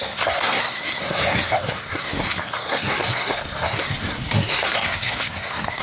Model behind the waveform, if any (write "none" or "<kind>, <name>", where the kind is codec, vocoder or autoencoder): codec, SNAC